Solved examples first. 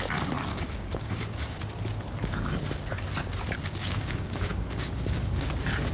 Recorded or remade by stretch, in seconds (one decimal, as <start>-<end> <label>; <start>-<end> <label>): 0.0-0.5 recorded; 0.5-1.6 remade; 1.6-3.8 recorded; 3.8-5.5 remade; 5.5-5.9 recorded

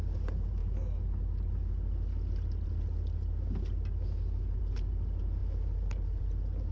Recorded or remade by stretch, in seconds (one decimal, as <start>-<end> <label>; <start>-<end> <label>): 0.0-6.7 recorded

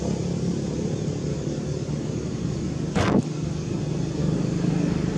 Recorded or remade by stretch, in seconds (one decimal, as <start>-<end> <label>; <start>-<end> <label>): 0.0-1.3 recorded; 1.3-3.8 remade; 3.8-4.2 recorded; 4.2-5.2 remade